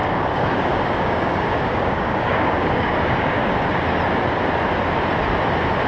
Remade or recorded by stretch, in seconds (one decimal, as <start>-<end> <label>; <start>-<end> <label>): 0.0-3.5 remade; 3.5-5.9 recorded